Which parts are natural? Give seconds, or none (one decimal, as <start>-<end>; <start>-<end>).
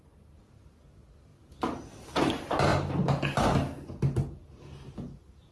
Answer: 0.0-5.5